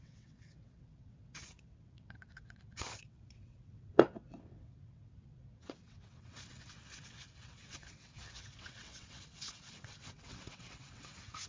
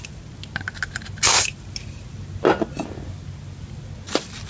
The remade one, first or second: first